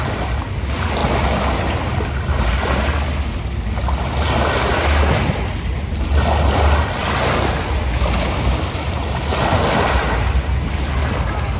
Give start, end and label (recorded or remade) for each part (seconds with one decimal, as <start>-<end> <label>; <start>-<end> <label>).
0.0-11.6 recorded